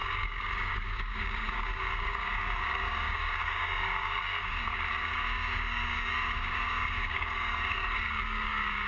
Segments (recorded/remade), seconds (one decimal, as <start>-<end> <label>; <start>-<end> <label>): 0.0-8.9 remade